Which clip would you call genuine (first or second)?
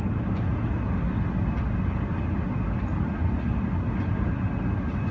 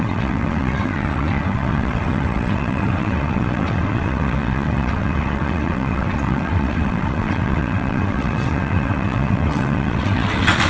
first